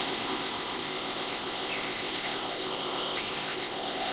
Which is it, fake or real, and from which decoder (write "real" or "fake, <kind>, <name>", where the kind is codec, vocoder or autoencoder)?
fake, codec, ZipCodec